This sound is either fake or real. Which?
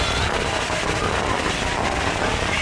real